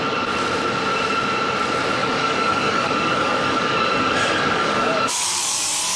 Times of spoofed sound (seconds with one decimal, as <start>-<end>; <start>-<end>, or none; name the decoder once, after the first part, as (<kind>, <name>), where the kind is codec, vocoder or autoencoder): 2.0-5.6 (codec, DAC)